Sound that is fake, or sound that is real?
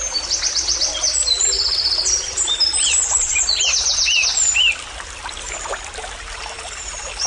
real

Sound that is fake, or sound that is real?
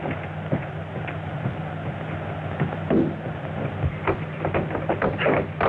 real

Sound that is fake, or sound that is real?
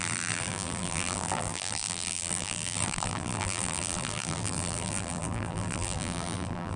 fake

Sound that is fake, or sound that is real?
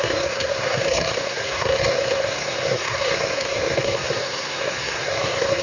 fake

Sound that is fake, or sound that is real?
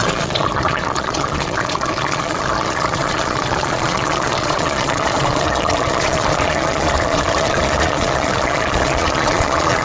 fake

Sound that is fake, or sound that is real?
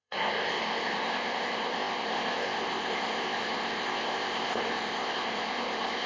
fake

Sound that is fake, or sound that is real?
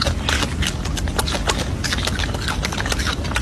real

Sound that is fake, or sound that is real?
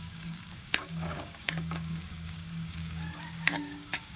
fake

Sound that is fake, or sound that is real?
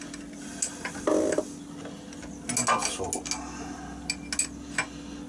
real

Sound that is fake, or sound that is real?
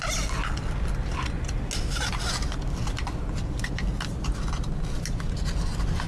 real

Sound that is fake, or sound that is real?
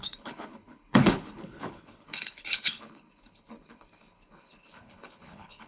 fake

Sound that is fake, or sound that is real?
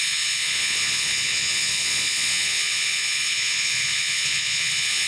fake